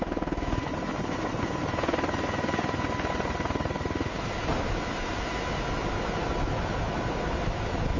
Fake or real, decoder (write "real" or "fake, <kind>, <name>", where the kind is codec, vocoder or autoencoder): real